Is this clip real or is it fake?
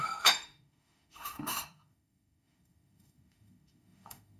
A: fake